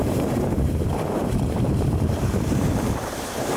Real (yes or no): no